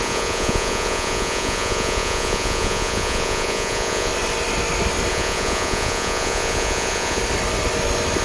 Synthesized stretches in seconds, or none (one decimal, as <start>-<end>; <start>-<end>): 0.0-4.1; 5.1-7.2